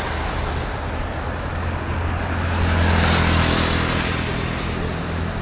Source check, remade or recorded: recorded